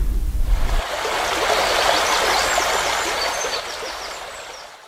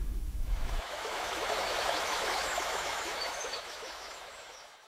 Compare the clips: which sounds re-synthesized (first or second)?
second